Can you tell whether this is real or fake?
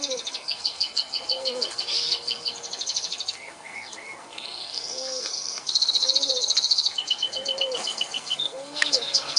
fake